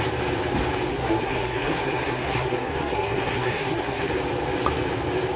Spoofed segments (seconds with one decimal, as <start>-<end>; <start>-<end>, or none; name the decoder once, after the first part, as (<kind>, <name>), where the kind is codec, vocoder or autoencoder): 0.9-4.1 (codec, SNAC)